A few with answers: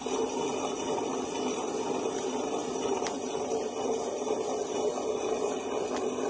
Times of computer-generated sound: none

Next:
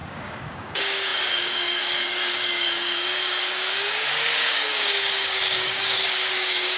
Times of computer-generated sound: 0.0-6.8 (codec, DAC)

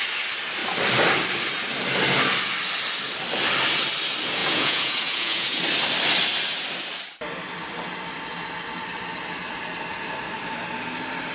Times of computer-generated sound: 4.4-5.6 (vocoder, Vocos)

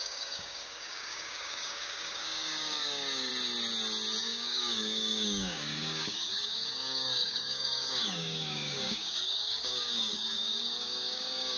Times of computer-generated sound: 0.0-3.3 (codec, DAC); 4.2-11.6

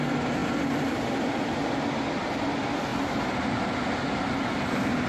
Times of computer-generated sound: 0.4-2.5 (vocoder, BigVGAN v2)

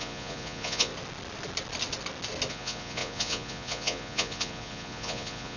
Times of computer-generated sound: 0.0-0.9 (vocoder, Vocos); 2.5-5.6

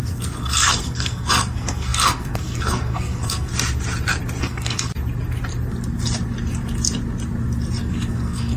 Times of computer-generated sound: 0.0-3.5 (codec, SNAC); 4.4-4.9; 7.8-8.6

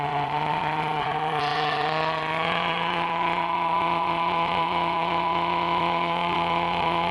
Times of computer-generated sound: 0.0-7.1 (vocoder, Vocos)